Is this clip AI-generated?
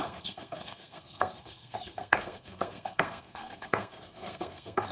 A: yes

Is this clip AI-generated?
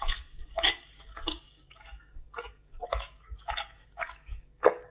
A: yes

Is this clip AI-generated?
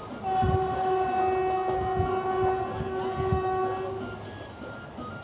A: no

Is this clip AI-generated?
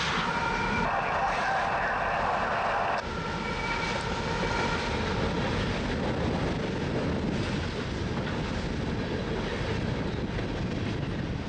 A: no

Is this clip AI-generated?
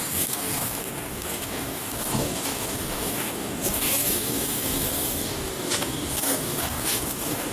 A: yes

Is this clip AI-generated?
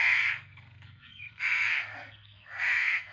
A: yes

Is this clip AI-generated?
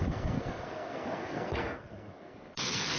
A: yes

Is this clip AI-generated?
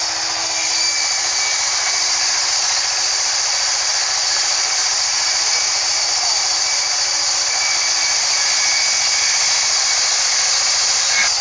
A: no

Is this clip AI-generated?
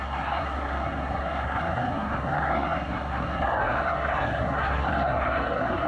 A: yes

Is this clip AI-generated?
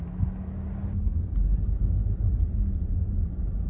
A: no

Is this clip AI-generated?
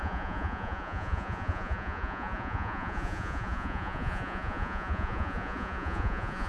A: yes